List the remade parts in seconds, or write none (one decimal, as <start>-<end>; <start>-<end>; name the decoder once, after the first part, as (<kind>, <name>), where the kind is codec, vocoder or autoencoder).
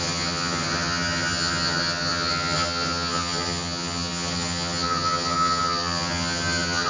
0.0-6.9 (vocoder, HiFi-GAN)